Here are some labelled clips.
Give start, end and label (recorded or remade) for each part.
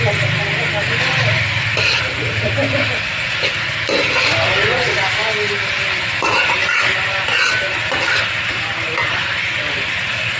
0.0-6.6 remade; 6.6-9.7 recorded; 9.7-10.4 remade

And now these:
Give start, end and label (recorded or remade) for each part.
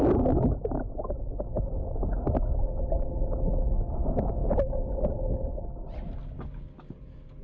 0.0-4.4 recorded; 4.4-5.1 remade; 5.1-7.4 recorded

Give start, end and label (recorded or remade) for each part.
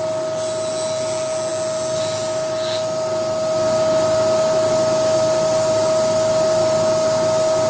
0.0-7.7 recorded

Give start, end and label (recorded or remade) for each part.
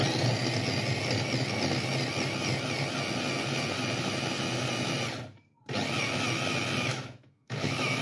0.0-6.9 recorded; 6.9-8.0 remade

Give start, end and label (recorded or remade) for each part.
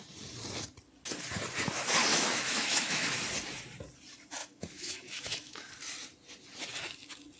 0.0-2.1 recorded; 2.1-3.1 remade; 3.1-4.4 recorded; 4.4-5.7 remade; 5.7-7.4 recorded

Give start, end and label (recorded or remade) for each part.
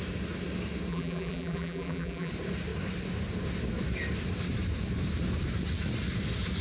0.0-0.9 recorded; 0.9-2.3 remade; 2.3-6.6 recorded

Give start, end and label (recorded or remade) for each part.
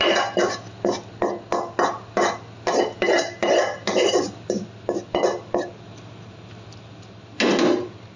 0.0-8.2 recorded